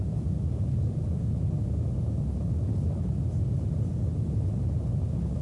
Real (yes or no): yes